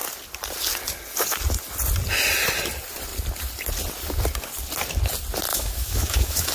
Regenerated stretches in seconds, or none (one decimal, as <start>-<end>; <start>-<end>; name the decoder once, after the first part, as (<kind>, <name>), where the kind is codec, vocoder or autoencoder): 5.5-6.5 (autoencoder, DAC-VAE)